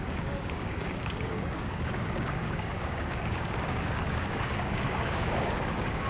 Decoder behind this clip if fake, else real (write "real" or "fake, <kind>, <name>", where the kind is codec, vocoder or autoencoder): fake, codec, DAC